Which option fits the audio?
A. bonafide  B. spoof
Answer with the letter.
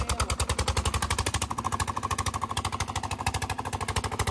A